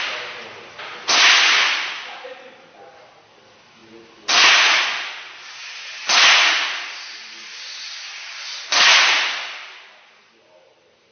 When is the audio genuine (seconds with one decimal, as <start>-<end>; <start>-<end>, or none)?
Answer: 0.0-11.1